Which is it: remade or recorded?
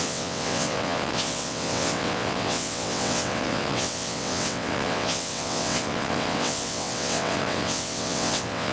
remade